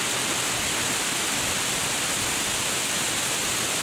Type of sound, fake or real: real